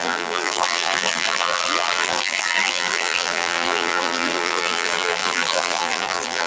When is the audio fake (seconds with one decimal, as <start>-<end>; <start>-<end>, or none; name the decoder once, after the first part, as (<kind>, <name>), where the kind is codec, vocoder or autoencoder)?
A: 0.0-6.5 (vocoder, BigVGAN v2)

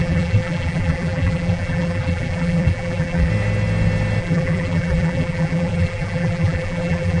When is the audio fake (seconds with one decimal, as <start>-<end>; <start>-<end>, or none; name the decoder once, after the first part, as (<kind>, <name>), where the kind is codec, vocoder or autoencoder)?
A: 0.0-3.3 (vocoder, BigVGAN v2); 4.2-7.2

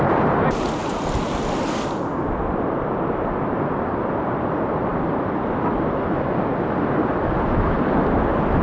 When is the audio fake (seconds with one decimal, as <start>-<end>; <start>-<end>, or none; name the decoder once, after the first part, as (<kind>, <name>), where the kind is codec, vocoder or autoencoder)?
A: none

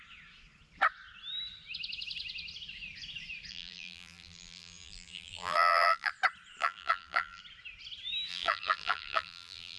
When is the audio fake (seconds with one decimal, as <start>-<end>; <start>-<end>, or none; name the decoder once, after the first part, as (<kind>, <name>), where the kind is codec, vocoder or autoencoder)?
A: 3.5-6.1 (vocoder, BigVGAN v2); 6.6-7.4; 8.3-9.8